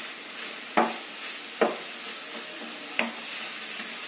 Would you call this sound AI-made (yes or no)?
no